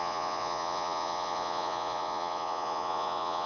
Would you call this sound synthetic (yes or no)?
yes